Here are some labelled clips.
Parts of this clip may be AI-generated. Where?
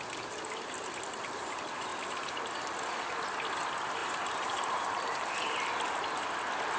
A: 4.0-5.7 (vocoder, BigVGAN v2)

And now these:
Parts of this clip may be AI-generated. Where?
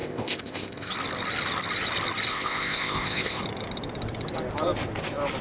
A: 0.0-0.9 (codec, ZipCodec); 2.3-3.4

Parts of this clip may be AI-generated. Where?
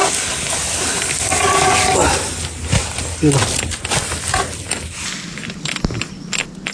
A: none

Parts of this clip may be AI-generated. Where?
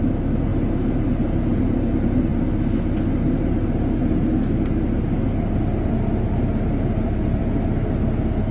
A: none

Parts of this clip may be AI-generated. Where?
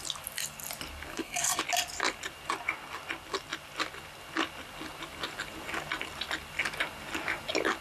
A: 1.1-1.6 (codec, SNAC)